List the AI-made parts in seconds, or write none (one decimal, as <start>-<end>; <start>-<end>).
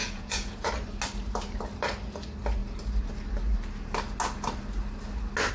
0.0-0.7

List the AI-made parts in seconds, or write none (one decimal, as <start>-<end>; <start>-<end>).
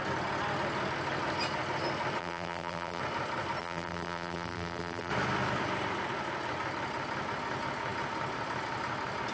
2.2-3.0; 3.6-5.1